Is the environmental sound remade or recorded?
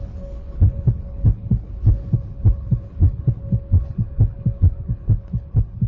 remade